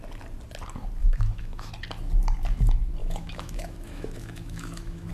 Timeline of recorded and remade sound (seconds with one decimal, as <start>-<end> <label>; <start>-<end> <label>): 0.0-1.0 recorded; 1.0-1.7 remade; 1.7-3.0 recorded; 3.0-5.1 remade